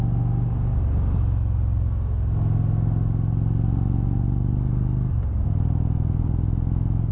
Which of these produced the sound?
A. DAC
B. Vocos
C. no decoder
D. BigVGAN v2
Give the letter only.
C